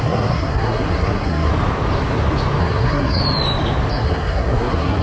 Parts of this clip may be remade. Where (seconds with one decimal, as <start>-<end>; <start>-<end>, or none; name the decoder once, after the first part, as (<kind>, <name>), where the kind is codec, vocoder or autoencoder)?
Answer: 0.0-1.5 (codec, SNAC); 2.6-3.2; 3.9-5.0